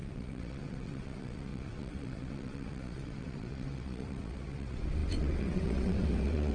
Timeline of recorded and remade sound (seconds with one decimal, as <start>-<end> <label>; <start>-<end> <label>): 0.0-6.5 remade